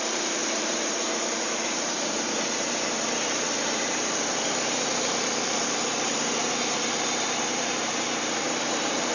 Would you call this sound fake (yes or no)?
yes